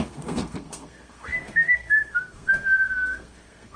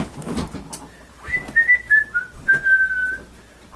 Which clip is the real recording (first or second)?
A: second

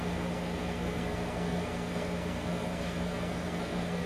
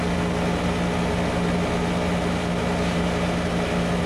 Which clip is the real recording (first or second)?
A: second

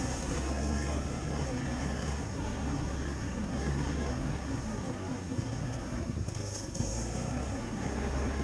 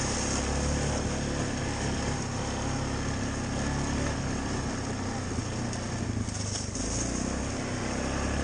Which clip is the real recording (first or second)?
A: second